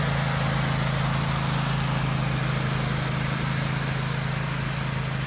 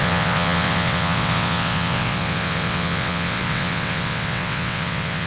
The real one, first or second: first